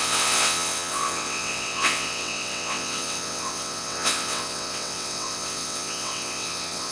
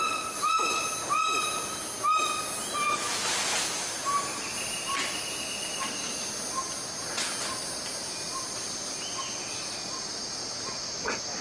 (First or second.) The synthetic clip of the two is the first